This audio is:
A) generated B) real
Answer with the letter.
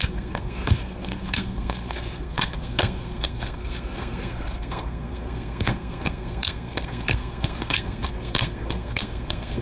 A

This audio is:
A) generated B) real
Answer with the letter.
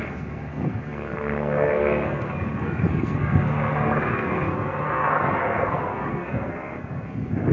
A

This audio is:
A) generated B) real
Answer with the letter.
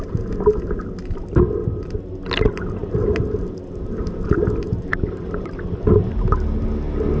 B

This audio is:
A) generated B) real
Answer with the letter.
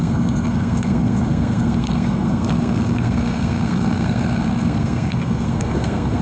A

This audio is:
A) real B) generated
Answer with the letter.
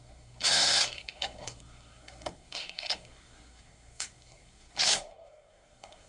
B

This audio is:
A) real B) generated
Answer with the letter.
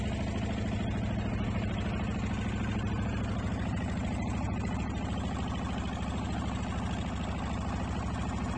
A